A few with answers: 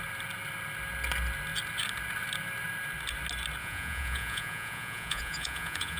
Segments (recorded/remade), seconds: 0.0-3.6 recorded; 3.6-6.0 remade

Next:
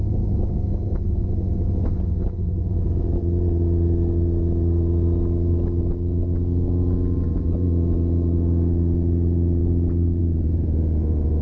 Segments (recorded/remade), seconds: 0.0-11.4 recorded

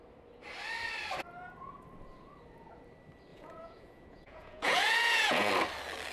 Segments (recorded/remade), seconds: 0.0-3.3 recorded; 3.3-5.5 remade; 5.5-6.1 recorded

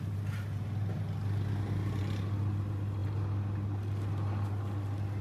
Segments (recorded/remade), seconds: 0.0-5.2 recorded

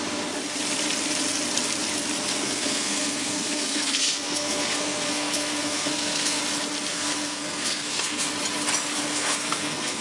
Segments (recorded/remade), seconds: 0.0-2.3 recorded; 2.3-6.4 remade; 6.4-6.9 recorded; 6.9-8.3 remade; 8.3-9.1 recorded; 9.1-10.0 remade

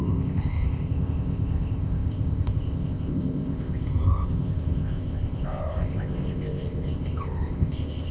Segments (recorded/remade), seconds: 0.0-8.1 remade

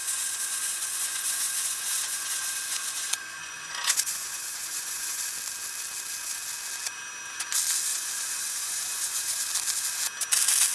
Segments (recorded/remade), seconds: 0.0-5.2 remade; 5.2-7.9 recorded; 7.9-9.4 remade; 9.4-10.7 recorded